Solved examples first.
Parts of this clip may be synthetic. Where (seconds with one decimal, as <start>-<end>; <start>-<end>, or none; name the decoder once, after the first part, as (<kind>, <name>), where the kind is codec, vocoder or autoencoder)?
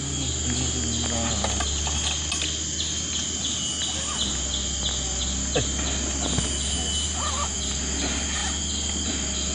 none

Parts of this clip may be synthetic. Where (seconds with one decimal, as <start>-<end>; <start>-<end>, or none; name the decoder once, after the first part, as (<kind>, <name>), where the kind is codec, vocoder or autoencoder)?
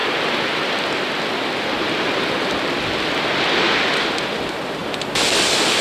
none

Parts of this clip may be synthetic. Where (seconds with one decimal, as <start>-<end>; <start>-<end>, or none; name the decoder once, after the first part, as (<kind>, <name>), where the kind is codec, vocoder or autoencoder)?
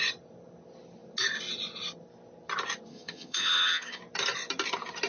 2.9-4.0 (vocoder, HiFi-GAN)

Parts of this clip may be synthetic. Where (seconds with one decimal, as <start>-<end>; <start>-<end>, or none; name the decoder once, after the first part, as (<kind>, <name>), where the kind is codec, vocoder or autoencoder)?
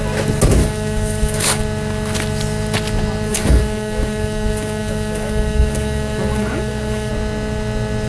0.6-1.6 (codec, DAC); 3.3-7.1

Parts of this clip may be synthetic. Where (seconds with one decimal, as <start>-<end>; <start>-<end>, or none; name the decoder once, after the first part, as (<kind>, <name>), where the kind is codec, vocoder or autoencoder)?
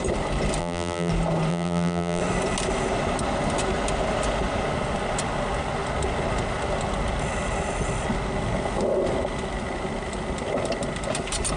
0.6-1.1 (vocoder, BigVGAN v2); 1.5-2.2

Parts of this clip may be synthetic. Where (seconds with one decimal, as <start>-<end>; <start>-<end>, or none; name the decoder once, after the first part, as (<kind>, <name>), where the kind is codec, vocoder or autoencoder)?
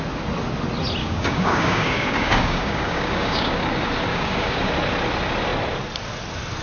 1.0-3.6 (codec, DAC); 4.1-4.7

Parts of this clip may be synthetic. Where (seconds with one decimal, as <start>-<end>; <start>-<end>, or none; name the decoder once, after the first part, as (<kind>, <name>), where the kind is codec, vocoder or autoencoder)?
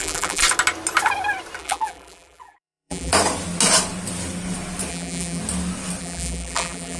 0.0-0.4 (vocoder, BigVGAN v2); 1.6-3.1; 4.9-5.4; 6.0-7.0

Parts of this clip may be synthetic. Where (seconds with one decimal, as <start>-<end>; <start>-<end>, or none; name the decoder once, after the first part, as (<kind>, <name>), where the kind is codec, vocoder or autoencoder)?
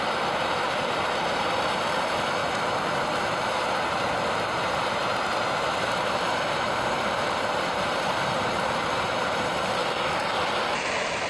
0.0-9.8 (vocoder, BigVGAN v2)